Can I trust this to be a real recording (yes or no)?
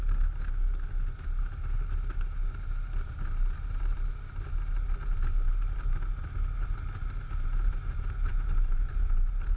yes